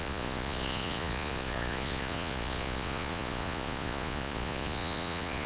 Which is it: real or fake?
fake